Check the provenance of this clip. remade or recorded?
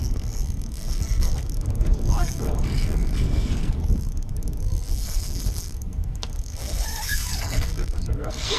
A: remade